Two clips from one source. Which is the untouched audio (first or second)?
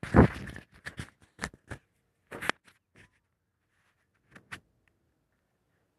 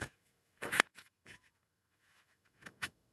first